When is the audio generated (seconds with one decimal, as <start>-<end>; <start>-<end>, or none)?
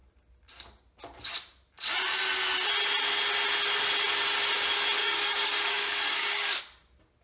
5.0-6.6